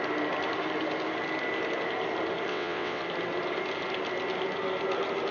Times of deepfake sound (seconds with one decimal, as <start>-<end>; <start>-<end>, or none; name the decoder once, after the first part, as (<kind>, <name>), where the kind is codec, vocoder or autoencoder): 2.5-3.0 (vocoder, WaveNeXt)